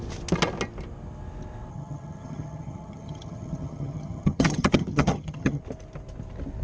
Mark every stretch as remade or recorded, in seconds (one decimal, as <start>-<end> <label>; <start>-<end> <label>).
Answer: 0.0-1.7 recorded; 1.7-5.6 remade; 5.6-6.6 recorded